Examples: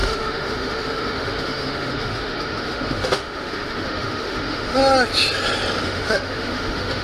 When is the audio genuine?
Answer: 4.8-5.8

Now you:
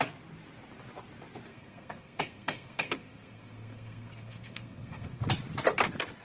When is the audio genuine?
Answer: 0.0-1.5; 5.2-6.2

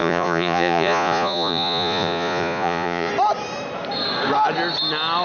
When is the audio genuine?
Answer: 3.1-5.2

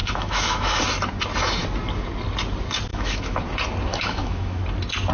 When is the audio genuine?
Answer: 0.8-2.9; 3.4-3.9; 4.6-5.1

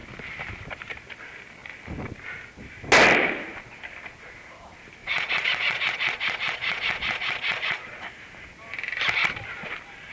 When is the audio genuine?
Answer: 0.0-5.0; 8.2-10.1

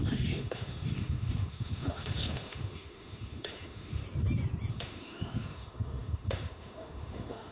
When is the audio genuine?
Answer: 4.0-4.7

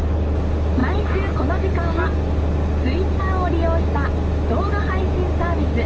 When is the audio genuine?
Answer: 0.0-5.9